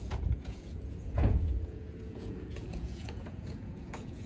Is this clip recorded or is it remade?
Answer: remade